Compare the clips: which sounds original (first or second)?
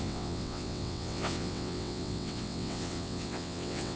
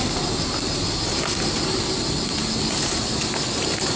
second